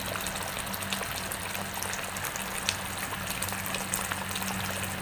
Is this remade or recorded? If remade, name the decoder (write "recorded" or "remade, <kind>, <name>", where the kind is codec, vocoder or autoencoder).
recorded